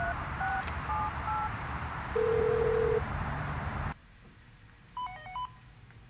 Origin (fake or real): fake